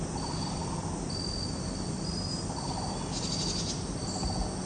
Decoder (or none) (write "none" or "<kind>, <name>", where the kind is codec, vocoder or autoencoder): none